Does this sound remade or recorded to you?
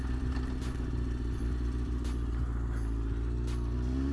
recorded